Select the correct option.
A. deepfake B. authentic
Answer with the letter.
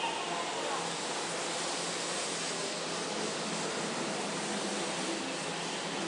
B